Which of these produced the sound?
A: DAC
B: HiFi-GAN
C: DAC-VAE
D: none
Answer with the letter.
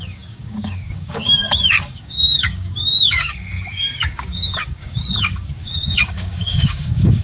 A